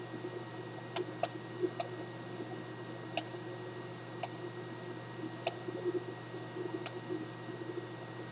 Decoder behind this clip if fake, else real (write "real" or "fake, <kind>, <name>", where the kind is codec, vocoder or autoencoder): real